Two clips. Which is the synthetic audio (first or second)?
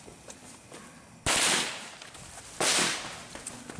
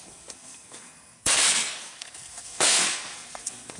second